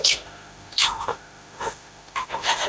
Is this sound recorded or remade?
remade